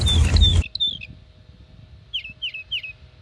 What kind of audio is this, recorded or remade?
recorded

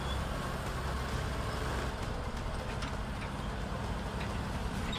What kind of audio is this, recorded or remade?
recorded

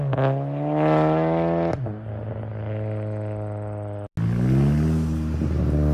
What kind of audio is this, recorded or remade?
recorded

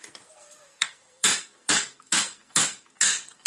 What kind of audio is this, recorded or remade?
remade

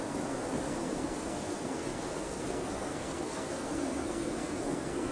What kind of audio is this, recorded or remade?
remade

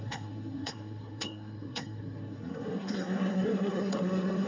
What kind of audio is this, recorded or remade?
remade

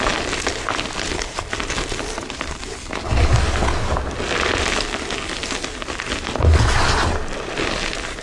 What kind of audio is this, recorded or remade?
recorded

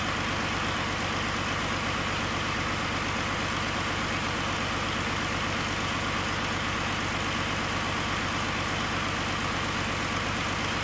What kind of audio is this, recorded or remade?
recorded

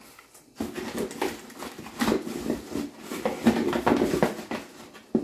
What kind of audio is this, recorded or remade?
recorded